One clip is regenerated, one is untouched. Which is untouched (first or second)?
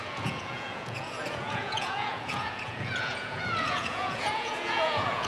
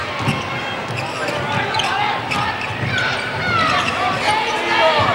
second